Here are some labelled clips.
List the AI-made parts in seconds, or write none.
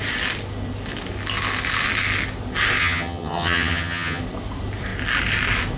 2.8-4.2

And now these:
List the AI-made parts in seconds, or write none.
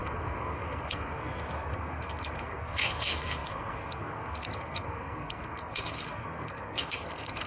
0.0-7.5